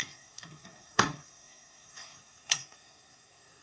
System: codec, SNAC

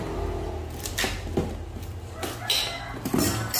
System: none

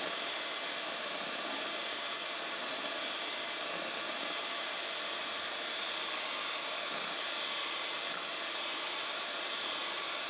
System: none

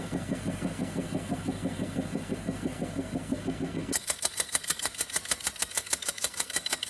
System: codec, SNAC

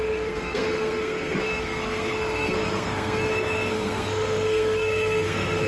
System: codec, SNAC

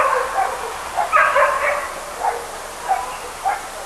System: none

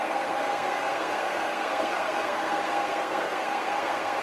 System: codec, SNAC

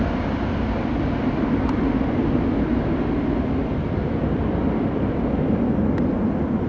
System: none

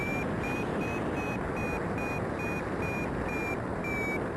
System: none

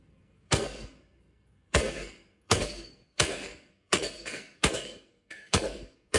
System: codec, SNAC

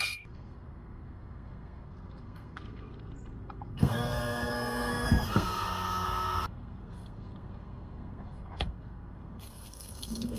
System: codec, SNAC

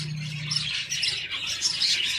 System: none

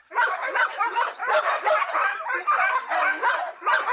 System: none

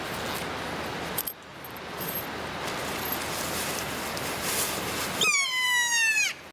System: none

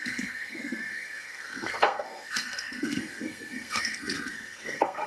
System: codec, SNAC